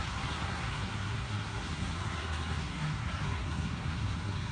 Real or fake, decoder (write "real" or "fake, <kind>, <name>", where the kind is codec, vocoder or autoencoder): fake, codec, SNAC